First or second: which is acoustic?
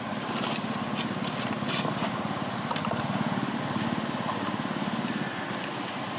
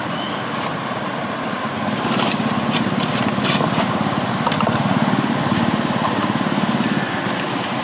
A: first